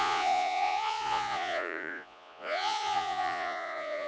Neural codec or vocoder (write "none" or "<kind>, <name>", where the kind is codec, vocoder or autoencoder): vocoder, Vocos